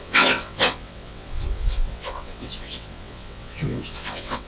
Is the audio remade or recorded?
remade